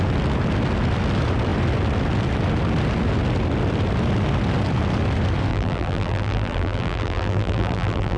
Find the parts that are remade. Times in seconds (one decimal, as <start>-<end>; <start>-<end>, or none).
5.5-8.2